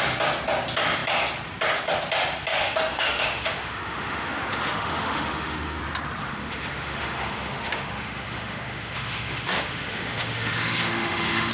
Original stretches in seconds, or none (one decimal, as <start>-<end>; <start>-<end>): 0.0-2.5; 5.8-6.2